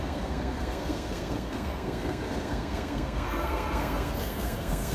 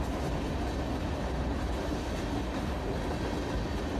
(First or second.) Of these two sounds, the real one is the second